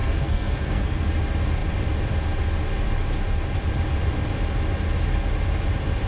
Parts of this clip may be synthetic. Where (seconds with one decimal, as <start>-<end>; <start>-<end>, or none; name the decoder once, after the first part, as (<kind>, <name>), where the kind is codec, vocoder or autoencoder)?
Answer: 0.0-1.1 (codec, SNAC)

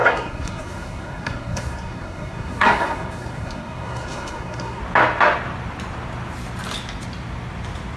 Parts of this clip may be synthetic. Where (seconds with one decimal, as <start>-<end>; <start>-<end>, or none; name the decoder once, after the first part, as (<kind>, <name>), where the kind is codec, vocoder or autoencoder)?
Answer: 0.0-4.8 (codec, SNAC)